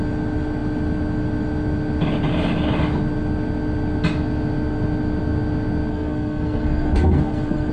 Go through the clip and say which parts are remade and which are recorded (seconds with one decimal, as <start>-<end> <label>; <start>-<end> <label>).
0.0-5.9 recorded; 5.9-7.7 remade